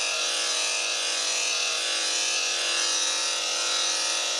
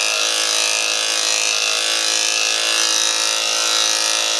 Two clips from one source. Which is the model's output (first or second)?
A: first